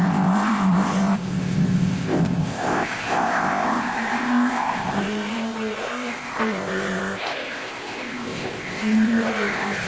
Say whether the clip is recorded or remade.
remade